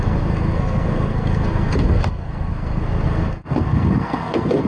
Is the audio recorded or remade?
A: remade